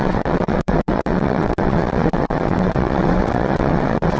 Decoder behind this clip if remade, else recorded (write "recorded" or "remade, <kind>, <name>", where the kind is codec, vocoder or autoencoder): remade, vocoder, WaveNeXt